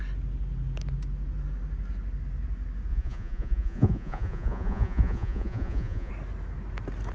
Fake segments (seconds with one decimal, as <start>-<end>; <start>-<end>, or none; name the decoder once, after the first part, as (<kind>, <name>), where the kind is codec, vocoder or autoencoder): 2.9-6.1 (vocoder, Vocos)